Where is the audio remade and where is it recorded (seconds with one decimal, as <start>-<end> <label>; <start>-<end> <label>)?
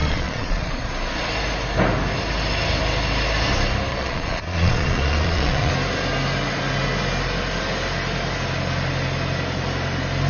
0.0-0.9 remade; 0.9-3.9 recorded; 3.9-5.7 remade; 5.7-10.3 recorded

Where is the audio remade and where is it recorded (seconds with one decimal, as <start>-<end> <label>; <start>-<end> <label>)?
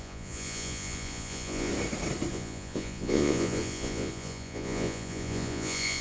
0.0-1.7 remade; 1.7-2.3 recorded; 2.3-6.0 remade